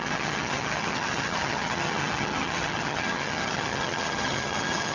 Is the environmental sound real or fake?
fake